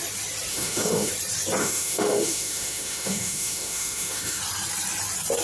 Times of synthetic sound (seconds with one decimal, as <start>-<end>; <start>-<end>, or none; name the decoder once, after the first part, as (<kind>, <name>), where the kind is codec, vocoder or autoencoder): 0.5-1.1 (autoencoder, DAC-VAE); 1.6-4.4